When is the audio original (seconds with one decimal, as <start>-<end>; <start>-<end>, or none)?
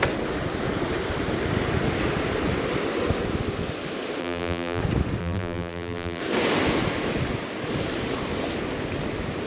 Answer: 0.0-4.2; 4.8-5.2; 6.2-9.5